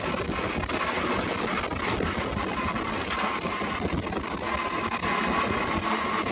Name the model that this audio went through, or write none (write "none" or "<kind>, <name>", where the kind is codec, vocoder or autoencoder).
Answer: none